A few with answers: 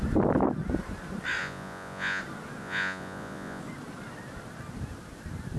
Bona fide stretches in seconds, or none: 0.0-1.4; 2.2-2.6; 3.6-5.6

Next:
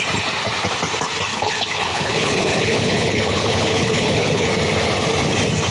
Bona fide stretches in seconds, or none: 0.0-1.3; 4.5-5.7

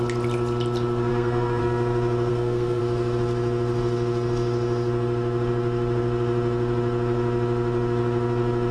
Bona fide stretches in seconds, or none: 0.0-1.1; 1.6-2.3; 2.8-8.7

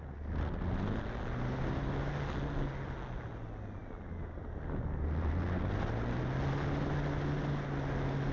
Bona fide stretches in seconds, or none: 0.0-8.3

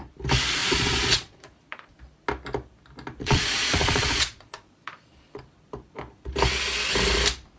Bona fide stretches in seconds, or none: 0.0-0.6; 2.0-3.2; 5.4-7.6

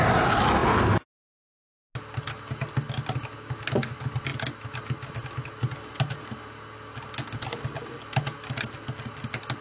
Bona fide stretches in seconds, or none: 0.0-9.6